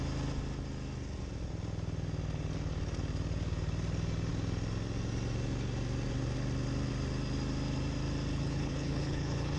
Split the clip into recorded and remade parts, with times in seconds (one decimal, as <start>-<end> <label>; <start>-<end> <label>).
0.0-8.3 recorded; 8.3-9.6 remade